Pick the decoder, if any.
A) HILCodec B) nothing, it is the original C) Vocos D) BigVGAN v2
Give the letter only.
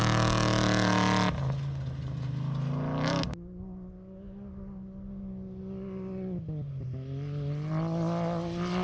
B